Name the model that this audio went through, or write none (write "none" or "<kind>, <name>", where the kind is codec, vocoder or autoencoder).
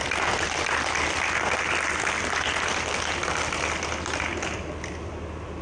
none